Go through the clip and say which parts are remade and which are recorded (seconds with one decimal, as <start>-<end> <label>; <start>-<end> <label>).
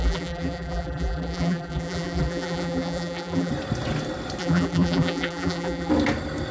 0.0-3.5 remade; 3.5-4.4 recorded; 4.4-5.9 remade; 5.9-6.5 recorded